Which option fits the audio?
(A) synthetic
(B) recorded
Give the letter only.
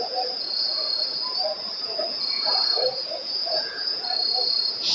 A